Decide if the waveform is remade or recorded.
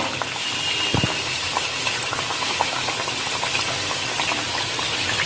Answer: recorded